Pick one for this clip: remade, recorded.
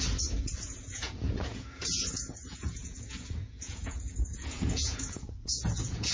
remade